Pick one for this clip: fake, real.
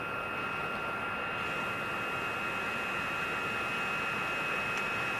real